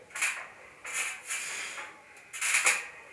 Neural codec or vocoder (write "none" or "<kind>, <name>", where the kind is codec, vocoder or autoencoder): none